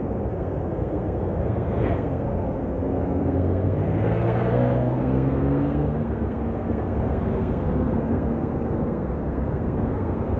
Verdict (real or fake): fake